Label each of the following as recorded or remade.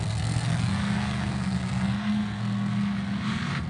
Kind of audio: remade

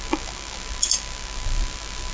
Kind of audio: recorded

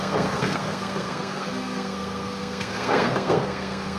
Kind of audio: remade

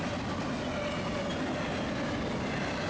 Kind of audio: recorded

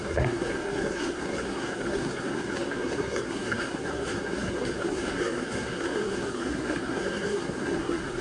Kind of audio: remade